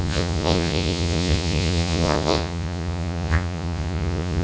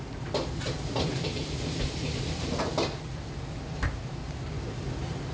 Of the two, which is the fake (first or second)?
first